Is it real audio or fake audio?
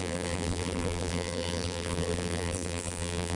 fake